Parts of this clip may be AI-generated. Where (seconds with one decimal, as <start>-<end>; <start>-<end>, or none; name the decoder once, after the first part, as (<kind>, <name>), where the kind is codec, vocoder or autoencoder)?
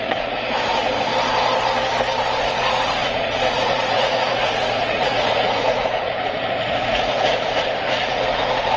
0.0-1.1 (vocoder, Vocos); 2.4-8.8